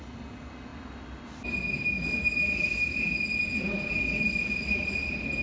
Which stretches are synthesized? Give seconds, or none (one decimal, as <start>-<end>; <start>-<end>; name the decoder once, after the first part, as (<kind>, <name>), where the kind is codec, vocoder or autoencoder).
none